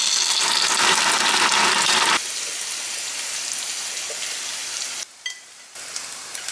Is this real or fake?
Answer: real